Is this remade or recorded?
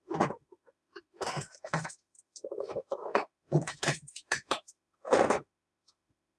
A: remade